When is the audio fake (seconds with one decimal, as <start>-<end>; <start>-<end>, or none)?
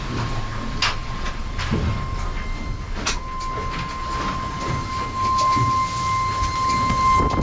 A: 1.0-1.6